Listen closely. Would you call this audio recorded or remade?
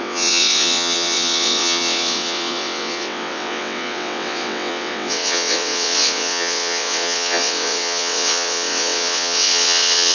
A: remade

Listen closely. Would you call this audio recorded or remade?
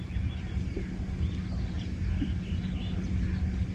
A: recorded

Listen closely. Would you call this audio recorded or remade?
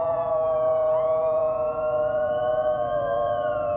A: remade